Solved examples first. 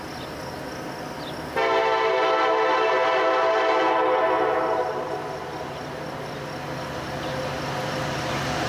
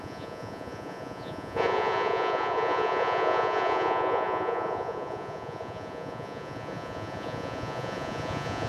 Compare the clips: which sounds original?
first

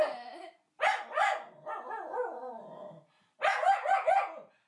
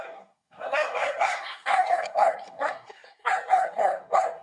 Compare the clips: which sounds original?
first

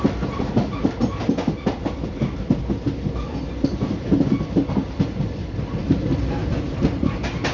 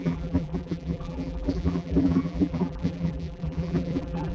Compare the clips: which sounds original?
first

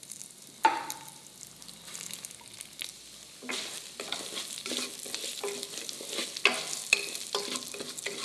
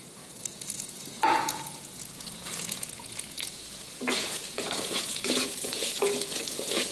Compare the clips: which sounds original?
first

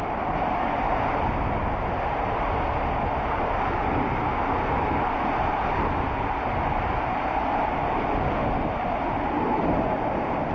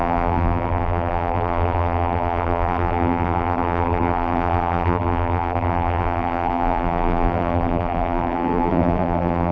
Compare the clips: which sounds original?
first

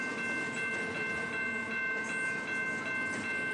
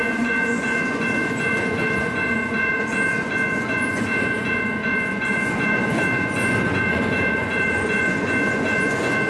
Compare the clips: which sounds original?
first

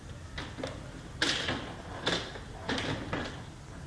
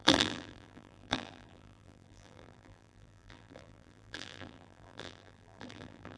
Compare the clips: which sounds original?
first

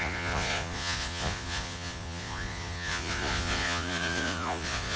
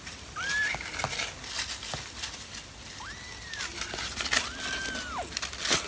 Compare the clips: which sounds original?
second